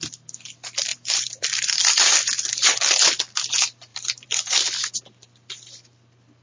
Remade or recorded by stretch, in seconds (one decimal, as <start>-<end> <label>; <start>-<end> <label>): 0.0-0.9 recorded; 0.9-2.7 remade; 2.7-3.9 recorded; 3.9-4.8 remade; 4.8-6.4 recorded